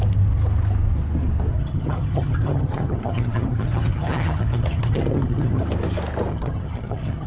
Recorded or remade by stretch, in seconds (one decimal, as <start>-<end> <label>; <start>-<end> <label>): 0.0-1.5 recorded; 1.5-5.6 remade; 5.6-6.3 recorded; 6.3-7.3 remade